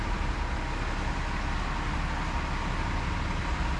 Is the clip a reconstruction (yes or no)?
no